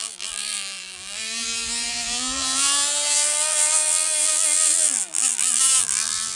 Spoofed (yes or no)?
yes